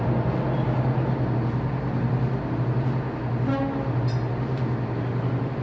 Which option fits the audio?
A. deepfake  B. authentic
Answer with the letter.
B